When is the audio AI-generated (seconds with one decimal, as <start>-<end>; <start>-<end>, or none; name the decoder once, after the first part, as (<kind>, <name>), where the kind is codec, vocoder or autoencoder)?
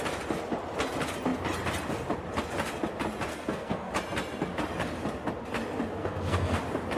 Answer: 3.3-3.9 (codec, SNAC); 6.0-6.6